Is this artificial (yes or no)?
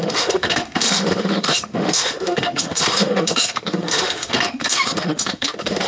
yes